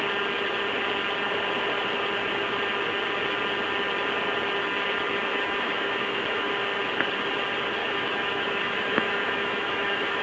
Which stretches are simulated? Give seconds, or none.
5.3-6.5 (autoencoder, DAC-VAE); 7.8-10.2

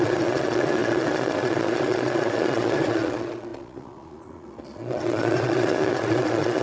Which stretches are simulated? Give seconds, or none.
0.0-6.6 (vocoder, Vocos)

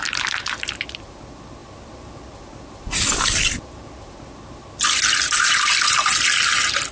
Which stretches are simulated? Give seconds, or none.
none

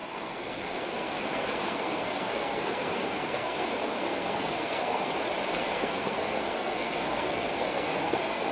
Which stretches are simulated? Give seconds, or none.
0.0-5.1 (codec, SNAC); 5.5-8.5

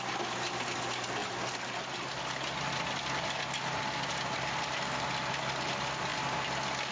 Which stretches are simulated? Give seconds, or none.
none

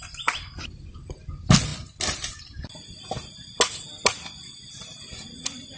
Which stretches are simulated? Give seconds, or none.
none